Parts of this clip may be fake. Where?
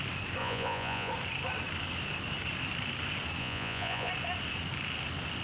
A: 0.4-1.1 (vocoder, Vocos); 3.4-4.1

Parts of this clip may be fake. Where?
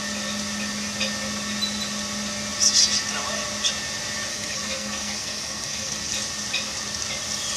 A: 4.3-6.1 (codec, SNAC)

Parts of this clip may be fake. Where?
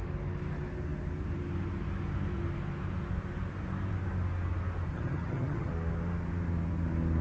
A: 4.9-5.7 (vocoder, HiFi-GAN)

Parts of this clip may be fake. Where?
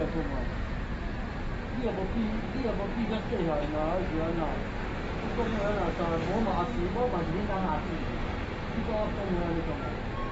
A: 0.5-1.2 (vocoder, Vocos)